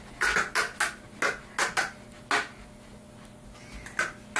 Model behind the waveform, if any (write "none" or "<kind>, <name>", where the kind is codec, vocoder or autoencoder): none